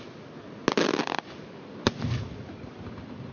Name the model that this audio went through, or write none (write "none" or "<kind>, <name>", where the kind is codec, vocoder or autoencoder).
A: none